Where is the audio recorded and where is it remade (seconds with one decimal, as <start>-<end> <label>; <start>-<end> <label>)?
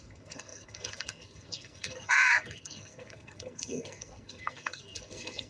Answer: 0.0-5.5 remade